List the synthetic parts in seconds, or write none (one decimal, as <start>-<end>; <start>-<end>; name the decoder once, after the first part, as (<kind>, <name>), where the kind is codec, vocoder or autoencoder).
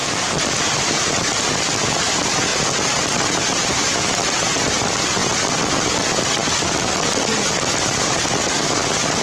none